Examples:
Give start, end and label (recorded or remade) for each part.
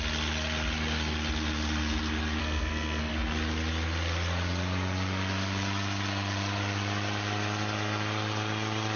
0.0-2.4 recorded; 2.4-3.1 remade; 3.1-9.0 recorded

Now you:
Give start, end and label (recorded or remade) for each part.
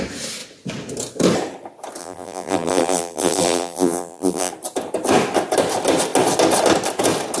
0.0-2.0 recorded; 2.0-4.5 remade; 4.5-7.4 recorded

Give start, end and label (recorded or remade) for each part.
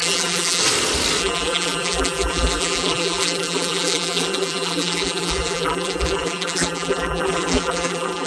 0.0-0.6 remade; 0.6-1.2 recorded; 1.2-8.3 remade